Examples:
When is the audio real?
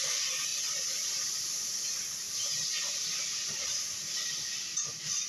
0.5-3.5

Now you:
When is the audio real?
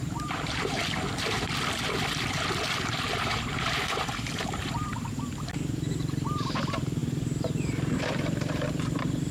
0.8-2.8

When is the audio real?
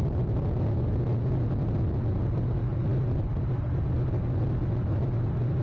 0.0-5.6